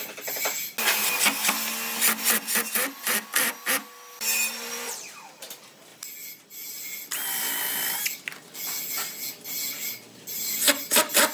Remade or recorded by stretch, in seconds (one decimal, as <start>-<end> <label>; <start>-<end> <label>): 0.0-3.8 recorded; 3.8-5.4 remade; 5.4-11.3 recorded